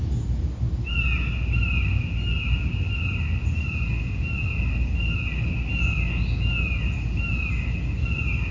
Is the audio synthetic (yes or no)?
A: no